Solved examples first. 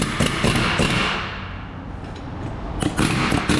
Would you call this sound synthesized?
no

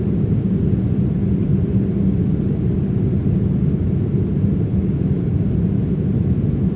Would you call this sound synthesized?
no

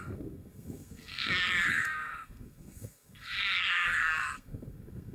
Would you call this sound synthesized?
yes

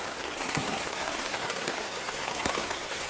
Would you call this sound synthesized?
yes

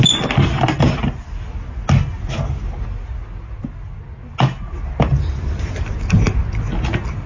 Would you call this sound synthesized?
no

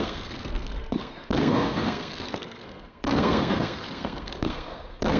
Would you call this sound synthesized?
yes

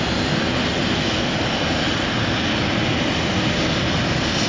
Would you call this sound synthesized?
no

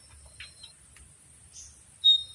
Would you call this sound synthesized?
no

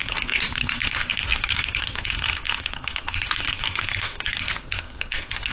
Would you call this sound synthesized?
yes